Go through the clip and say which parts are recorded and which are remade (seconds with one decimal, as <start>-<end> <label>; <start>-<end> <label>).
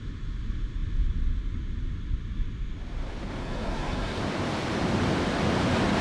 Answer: 0.0-3.4 recorded; 3.4-4.2 remade; 4.2-6.0 recorded